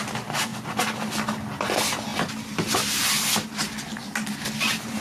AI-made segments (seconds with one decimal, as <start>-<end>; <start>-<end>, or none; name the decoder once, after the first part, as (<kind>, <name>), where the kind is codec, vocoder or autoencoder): none